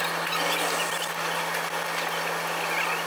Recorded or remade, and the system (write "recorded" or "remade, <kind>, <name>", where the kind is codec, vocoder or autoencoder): recorded